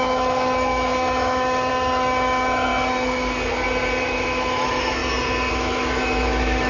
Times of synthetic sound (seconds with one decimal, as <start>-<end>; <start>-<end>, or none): 0.0-2.7; 4.0-5.0; 5.5-6.7